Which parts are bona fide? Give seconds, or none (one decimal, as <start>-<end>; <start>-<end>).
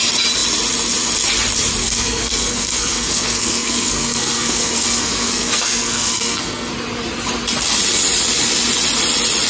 0.0-1.8; 6.7-9.5